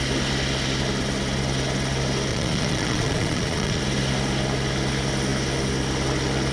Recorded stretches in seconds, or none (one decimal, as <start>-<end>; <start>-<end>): 0.0-2.3; 3.8-6.5